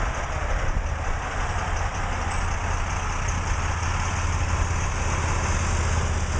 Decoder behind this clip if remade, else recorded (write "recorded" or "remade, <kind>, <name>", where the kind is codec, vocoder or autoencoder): recorded